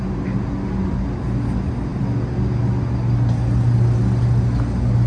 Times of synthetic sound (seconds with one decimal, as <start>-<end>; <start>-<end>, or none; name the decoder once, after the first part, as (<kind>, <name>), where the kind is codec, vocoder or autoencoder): none